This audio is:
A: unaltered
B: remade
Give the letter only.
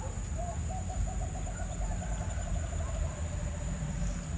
A